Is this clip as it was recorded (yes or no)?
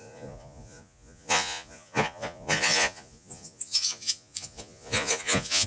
no